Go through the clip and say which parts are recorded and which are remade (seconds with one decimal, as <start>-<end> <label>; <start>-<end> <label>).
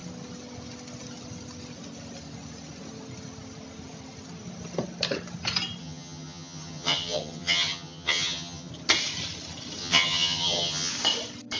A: 0.0-5.8 recorded; 5.8-8.7 remade; 8.7-9.8 recorded; 9.8-10.9 remade; 10.9-11.6 recorded